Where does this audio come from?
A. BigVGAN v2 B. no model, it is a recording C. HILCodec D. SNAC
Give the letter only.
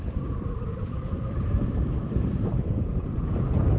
A